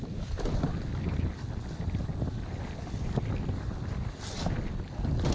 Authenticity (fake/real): real